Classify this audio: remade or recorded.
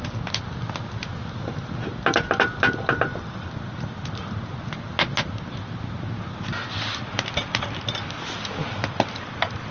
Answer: recorded